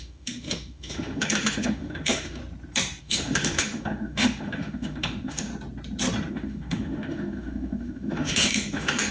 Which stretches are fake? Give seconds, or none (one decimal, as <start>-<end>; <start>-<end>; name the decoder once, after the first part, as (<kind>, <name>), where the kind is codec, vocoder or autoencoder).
0.0-2.4 (autoencoder, DAC-VAE); 3.0-5.5; 6.3-9.1